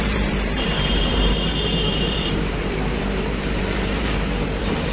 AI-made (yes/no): yes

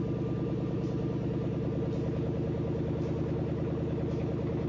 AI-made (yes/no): no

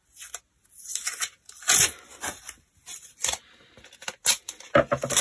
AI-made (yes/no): no